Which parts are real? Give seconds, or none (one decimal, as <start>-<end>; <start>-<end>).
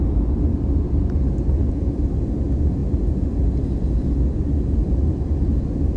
0.0-6.0